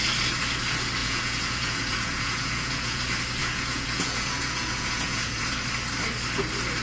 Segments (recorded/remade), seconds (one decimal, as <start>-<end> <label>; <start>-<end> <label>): 0.0-1.0 recorded; 1.0-3.0 remade; 3.0-3.4 recorded; 3.4-5.4 remade; 5.4-6.8 recorded

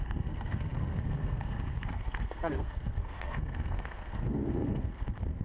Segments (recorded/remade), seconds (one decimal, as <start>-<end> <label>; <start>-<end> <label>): 0.0-5.4 remade

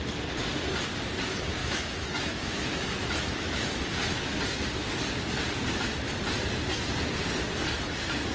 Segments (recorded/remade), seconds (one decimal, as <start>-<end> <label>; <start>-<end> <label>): 0.0-1.6 recorded; 1.6-3.8 remade; 3.8-8.3 recorded

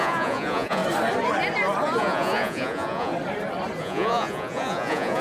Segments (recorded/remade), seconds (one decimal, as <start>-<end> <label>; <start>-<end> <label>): 0.0-0.8 remade; 0.8-2.0 recorded; 2.0-3.1 remade; 3.1-3.8 recorded; 3.8-5.2 remade

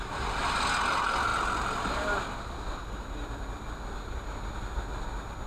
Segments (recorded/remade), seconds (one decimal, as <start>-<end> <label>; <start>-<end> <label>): 0.0-5.5 recorded

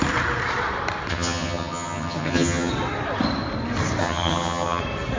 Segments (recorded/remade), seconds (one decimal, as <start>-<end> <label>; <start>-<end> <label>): 0.0-1.1 recorded; 1.1-2.7 remade; 2.7-4.0 recorded; 4.0-4.8 remade; 4.8-5.2 recorded

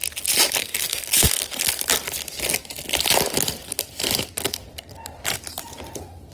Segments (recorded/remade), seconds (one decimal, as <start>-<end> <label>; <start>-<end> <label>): 0.0-0.6 recorded; 0.6-1.4 remade; 1.4-6.3 recorded